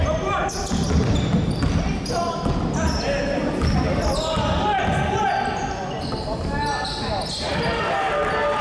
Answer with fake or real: real